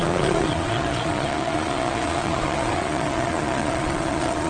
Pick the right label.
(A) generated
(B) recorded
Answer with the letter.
A